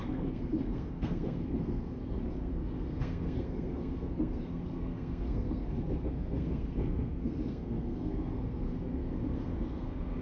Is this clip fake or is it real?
fake